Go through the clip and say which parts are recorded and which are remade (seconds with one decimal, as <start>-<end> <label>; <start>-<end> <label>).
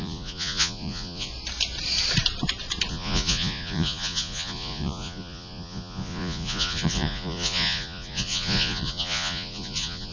0.0-1.3 remade; 1.3-2.9 recorded; 2.9-10.1 remade